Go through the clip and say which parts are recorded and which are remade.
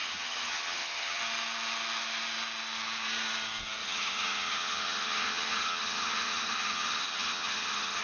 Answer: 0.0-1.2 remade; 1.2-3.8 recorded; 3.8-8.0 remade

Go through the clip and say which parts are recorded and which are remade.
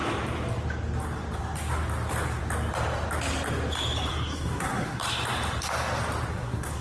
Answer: 0.0-4.1 recorded; 4.1-5.0 remade; 5.0-6.3 recorded; 6.3-6.8 remade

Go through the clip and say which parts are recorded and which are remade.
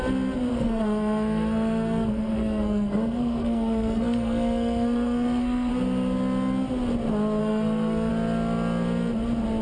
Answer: 0.0-0.5 recorded; 0.5-5.7 remade; 5.7-7.4 recorded; 7.4-8.1 remade; 8.1-9.6 recorded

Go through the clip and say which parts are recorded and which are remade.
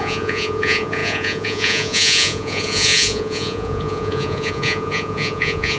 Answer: 0.0-5.8 remade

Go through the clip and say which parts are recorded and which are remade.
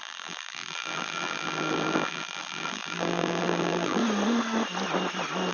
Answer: 0.0-4.0 remade; 4.0-5.5 recorded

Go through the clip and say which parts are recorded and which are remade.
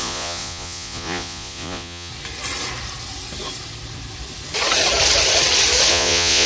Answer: 0.0-2.1 remade; 2.1-5.9 recorded; 5.9-6.5 remade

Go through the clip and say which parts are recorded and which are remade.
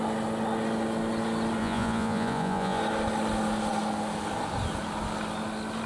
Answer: 0.0-1.6 recorded; 1.6-2.8 remade; 2.8-5.9 recorded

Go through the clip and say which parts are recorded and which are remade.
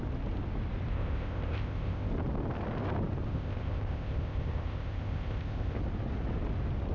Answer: 0.0-0.9 recorded; 0.9-2.1 remade; 2.1-3.3 recorded; 3.3-5.8 remade; 5.8-6.9 recorded